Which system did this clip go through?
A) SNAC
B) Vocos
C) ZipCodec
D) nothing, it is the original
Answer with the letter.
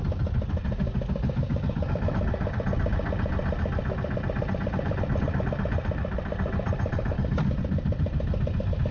D